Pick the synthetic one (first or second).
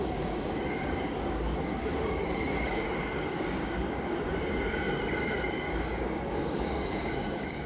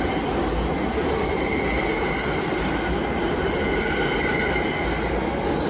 first